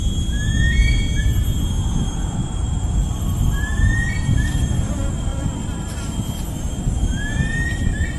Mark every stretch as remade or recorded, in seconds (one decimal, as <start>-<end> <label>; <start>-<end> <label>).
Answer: 0.0-3.0 recorded; 3.0-3.8 remade; 3.8-8.2 recorded